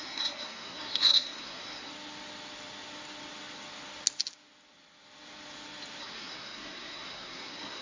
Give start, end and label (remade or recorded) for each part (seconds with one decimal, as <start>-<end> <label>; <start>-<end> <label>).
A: 0.0-1.9 remade; 1.9-6.0 recorded; 6.0-7.8 remade